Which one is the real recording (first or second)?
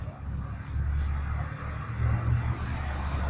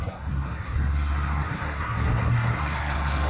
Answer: first